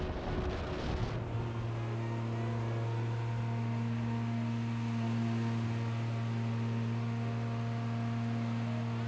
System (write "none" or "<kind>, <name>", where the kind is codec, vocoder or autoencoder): none